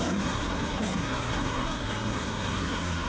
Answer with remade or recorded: remade